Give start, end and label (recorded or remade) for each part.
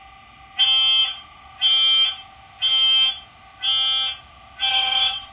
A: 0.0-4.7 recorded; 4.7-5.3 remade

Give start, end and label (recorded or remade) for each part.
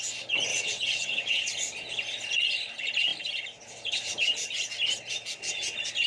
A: 0.0-0.5 recorded; 0.5-1.4 remade; 1.4-6.1 recorded